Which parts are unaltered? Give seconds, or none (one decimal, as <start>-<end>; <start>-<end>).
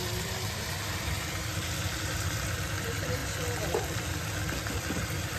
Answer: 3.2-4.7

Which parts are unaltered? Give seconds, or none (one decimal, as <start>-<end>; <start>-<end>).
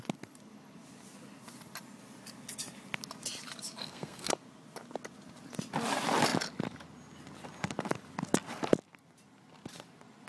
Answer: 0.0-3.8; 4.3-10.3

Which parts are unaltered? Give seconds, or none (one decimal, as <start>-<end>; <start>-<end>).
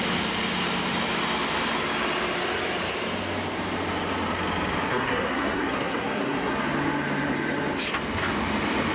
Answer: 0.0-4.9; 6.5-8.9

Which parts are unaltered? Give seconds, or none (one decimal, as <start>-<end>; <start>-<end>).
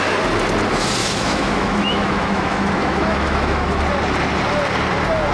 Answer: 0.0-1.0; 3.8-5.3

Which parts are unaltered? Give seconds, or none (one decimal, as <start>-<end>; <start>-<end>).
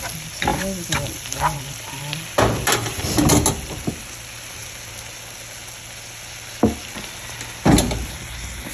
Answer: 0.0-0.5; 3.0-3.5; 4.6-8.7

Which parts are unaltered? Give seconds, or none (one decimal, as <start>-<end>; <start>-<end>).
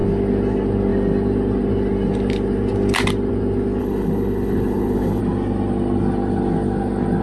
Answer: 0.0-3.8; 5.2-7.2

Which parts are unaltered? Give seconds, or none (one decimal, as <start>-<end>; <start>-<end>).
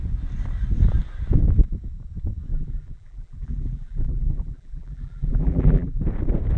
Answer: 0.0-2.5; 6.0-6.6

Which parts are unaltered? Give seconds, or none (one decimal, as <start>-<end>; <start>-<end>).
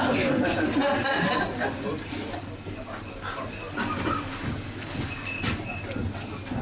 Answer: 0.0-6.6